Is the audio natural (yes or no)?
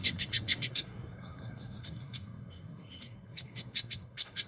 no